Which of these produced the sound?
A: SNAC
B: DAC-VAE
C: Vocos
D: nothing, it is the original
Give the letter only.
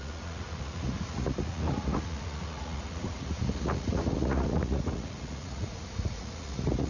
C